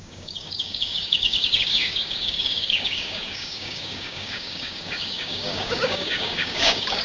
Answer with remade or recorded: remade